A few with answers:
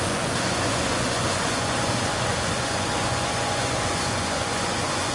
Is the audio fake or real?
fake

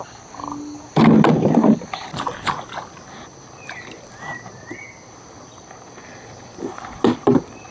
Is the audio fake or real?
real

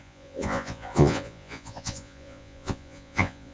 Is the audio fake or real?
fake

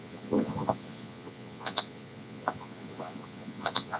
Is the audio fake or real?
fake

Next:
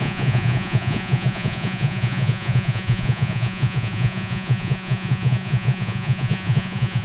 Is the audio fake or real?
fake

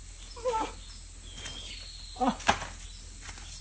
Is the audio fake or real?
real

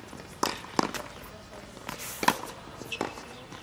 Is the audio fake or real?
real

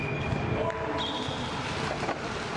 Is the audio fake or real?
real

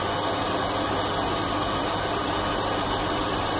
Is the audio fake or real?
real